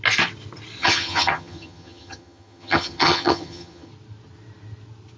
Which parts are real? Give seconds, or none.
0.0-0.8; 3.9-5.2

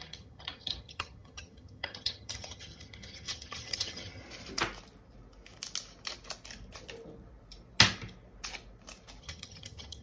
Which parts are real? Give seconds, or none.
4.2-9.2